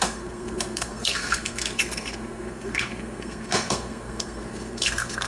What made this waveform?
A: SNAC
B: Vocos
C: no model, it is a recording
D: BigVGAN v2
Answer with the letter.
A